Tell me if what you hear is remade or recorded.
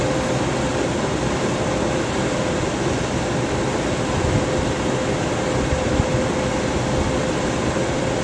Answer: recorded